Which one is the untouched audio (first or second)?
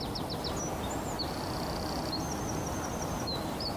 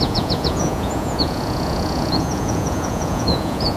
first